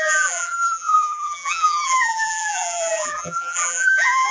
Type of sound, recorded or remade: remade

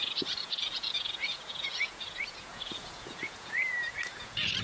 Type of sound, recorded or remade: remade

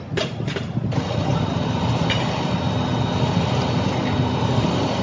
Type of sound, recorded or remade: recorded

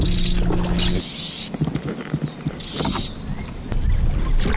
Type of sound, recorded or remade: recorded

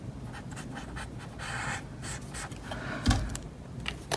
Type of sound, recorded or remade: remade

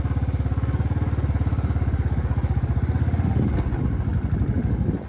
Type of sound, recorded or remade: recorded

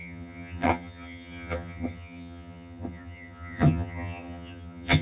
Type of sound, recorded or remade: remade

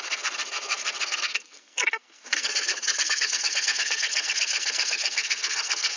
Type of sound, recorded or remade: remade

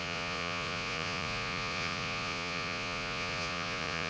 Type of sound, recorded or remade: remade